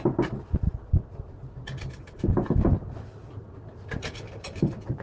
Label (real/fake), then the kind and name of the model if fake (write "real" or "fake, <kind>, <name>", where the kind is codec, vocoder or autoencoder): real